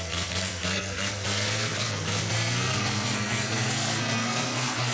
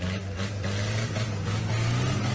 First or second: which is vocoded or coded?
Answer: first